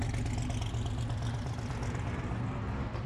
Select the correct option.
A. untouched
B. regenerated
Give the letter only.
A